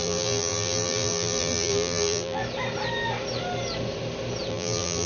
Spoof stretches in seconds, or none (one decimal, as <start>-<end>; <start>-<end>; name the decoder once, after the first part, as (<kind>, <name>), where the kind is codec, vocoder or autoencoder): 0.0-2.4 (vocoder, BigVGAN v2); 4.5-5.1

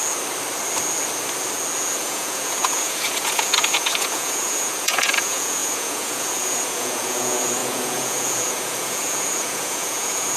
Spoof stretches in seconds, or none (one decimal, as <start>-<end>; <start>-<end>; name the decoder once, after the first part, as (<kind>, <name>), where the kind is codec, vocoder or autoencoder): 1.8-10.4 (vocoder, Vocos)

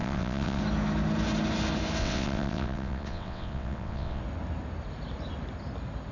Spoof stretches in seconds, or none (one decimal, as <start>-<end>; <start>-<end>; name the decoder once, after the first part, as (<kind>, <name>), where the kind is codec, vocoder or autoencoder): 0.0-0.6 (vocoder, WaveNeXt); 2.0-4.2

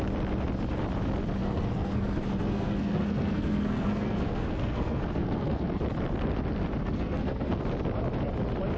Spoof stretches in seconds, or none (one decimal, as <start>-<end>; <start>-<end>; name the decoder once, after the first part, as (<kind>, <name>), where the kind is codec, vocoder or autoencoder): 1.4-5.8 (codec, SNAC); 6.8-7.6

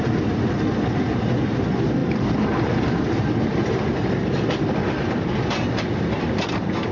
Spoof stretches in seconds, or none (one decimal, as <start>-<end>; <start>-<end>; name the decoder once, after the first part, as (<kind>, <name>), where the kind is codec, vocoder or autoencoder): none

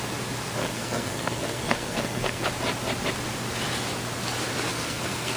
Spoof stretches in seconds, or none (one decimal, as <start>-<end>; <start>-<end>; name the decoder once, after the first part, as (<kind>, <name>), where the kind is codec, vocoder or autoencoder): 0.6-2.5 (codec, SNAC); 4.7-5.4

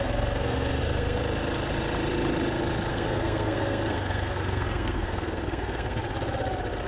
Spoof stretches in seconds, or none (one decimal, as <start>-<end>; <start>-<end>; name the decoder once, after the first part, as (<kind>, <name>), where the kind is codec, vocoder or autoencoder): 0.0-1.2 (codec, SNAC); 2.9-6.0

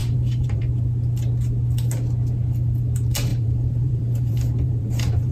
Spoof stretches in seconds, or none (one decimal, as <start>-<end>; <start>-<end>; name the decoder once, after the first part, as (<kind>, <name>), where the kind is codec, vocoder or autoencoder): 0.0-0.6 (vocoder, BigVGAN v2); 3.3-5.3